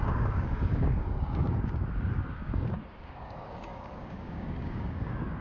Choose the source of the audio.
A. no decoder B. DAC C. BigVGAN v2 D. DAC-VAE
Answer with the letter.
B